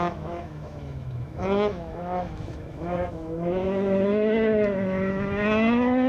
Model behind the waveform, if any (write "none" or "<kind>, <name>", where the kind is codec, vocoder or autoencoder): autoencoder, DAC-VAE